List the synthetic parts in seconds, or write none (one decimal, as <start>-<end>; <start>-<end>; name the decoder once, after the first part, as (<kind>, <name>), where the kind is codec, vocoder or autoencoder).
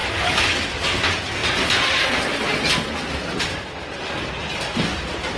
none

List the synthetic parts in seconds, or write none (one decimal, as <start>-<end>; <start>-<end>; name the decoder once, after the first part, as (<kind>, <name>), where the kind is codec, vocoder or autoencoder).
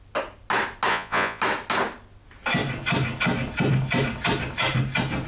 0.9-1.4 (vocoder, Vocos)